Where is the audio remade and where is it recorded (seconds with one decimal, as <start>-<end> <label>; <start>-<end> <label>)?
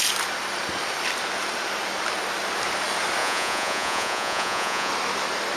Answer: 0.0-3.2 recorded; 3.2-4.9 remade; 4.9-5.6 recorded